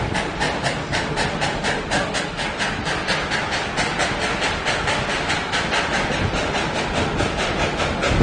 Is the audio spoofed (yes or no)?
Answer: no